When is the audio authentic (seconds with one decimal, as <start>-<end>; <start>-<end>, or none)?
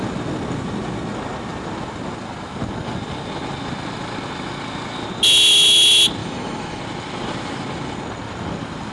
0.0-6.2; 6.8-8.9